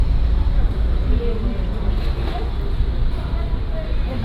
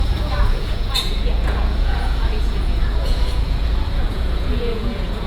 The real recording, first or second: first